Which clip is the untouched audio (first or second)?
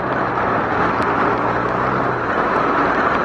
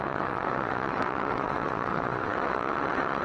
first